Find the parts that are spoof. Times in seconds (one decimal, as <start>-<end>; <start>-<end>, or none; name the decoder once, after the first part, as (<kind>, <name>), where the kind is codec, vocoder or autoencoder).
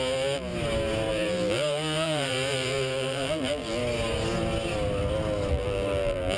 0.0-0.5 (vocoder, BigVGAN v2); 1.1-3.8; 5.5-6.4